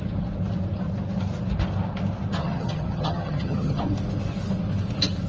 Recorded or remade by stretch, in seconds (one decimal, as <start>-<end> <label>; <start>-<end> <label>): 0.0-2.4 recorded; 2.4-3.8 remade; 3.8-5.3 recorded